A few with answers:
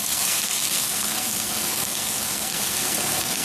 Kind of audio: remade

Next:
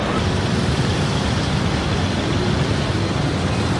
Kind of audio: recorded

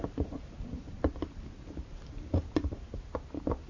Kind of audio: recorded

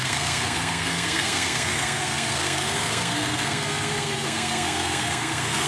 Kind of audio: remade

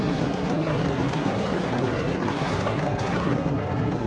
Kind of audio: remade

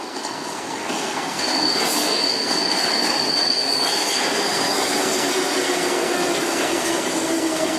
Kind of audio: remade